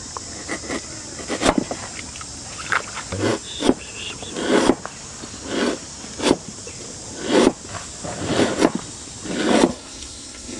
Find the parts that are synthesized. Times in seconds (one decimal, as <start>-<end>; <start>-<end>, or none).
9.7-10.6